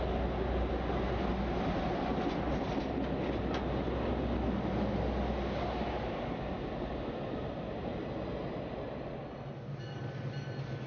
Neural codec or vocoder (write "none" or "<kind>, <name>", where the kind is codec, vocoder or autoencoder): none